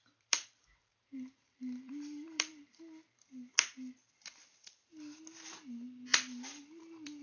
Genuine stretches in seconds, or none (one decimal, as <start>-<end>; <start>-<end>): 2.5-6.8